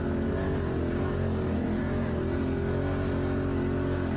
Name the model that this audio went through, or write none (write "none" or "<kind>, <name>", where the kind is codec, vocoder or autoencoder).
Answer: none